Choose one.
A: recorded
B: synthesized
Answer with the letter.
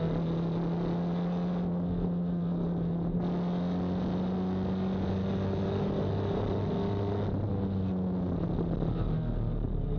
A